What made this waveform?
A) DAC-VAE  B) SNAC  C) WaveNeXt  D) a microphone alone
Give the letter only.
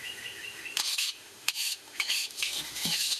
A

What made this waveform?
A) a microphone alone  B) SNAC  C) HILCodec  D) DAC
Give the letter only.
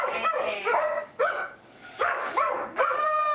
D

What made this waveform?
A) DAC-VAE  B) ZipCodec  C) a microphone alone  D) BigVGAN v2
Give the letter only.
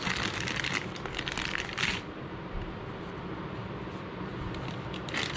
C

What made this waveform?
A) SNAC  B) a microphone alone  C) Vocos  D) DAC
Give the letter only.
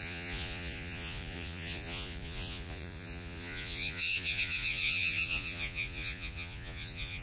C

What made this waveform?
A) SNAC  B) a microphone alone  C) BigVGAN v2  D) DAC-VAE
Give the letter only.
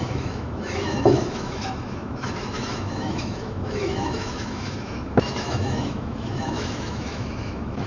D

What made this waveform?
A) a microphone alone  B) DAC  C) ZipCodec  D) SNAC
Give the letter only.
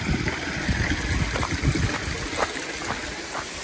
A